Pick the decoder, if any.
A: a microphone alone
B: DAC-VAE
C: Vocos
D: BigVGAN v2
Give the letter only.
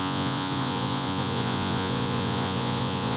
C